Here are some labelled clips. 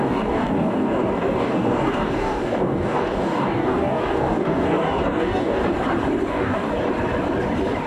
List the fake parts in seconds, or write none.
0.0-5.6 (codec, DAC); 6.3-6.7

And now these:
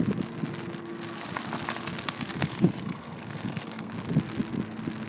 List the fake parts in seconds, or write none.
2.4-3.9 (codec, SNAC)

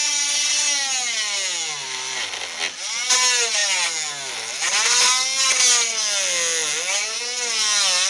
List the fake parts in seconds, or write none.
none

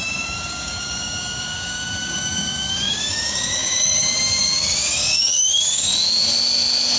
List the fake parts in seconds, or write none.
0.0-5.9 (codec, DAC)

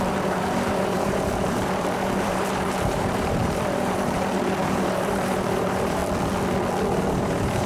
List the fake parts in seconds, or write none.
0.0-6.0 (vocoder, BigVGAN v2); 7.1-7.7